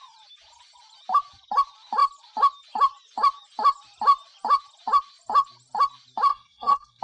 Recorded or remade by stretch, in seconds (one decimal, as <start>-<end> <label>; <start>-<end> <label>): 0.0-6.3 recorded; 6.3-7.0 remade